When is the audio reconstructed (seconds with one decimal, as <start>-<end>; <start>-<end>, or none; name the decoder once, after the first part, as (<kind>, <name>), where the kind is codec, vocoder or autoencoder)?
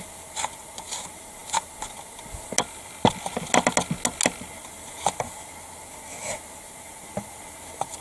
none